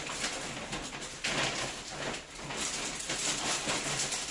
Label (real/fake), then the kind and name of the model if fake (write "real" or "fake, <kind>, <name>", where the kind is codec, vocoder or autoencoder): real